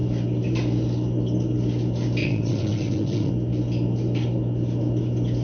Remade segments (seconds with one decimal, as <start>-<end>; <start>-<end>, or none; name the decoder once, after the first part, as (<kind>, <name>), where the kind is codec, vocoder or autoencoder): 2.2-3.3 (vocoder, WaveNeXt)